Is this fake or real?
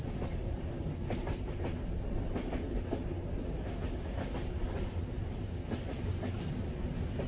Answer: real